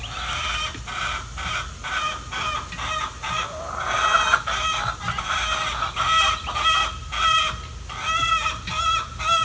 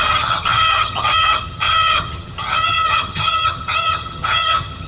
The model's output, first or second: second